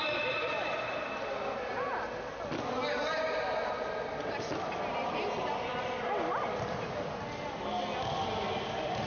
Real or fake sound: real